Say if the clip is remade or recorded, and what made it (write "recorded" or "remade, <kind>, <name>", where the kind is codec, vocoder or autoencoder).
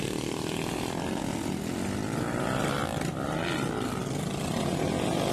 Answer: recorded